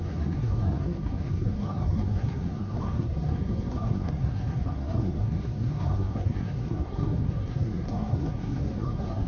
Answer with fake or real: fake